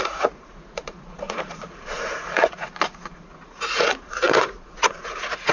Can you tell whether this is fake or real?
fake